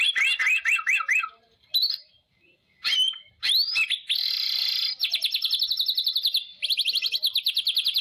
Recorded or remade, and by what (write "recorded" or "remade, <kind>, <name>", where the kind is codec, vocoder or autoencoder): recorded